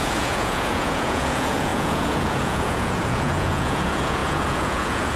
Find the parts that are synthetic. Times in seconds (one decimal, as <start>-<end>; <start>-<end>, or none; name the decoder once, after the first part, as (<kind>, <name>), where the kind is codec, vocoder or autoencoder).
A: 0.0-5.2 (vocoder, Vocos)